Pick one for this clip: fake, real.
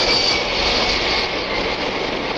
real